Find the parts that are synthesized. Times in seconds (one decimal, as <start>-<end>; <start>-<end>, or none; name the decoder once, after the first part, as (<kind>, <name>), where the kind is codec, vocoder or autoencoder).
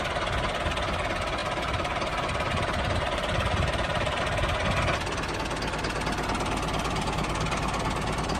1.4-4.2 (vocoder, BigVGAN v2)